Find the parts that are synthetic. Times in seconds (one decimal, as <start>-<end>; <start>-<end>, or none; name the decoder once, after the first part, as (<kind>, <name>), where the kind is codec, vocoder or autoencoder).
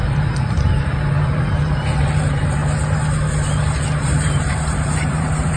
0.0-2.6 (vocoder, BigVGAN v2); 4.0-5.6